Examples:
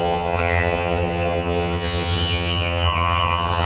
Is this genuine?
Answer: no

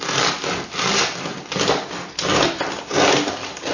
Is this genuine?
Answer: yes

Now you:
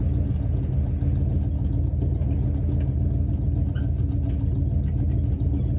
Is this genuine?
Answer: yes